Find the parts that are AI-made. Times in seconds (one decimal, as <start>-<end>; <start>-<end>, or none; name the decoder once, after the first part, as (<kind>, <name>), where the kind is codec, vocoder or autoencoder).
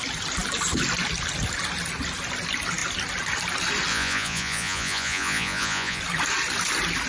3.9-6.0 (vocoder, Vocos)